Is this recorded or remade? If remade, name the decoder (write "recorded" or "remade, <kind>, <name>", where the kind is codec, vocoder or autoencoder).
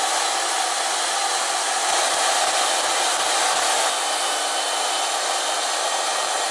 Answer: recorded